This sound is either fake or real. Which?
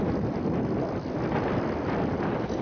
fake